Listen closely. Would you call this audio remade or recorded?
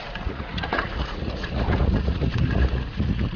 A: remade